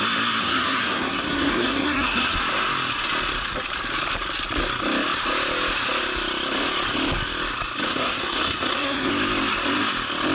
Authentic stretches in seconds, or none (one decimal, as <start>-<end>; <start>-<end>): 0.0-0.4; 2.4-7.9; 9.1-10.3